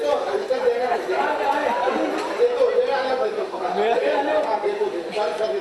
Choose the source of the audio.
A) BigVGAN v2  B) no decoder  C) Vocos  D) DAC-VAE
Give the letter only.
B